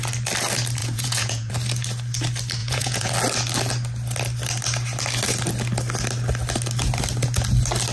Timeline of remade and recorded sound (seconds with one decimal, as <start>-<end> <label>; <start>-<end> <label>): 0.0-0.8 recorded; 0.8-1.5 remade; 1.5-2.6 recorded; 2.6-3.1 remade; 3.1-7.9 recorded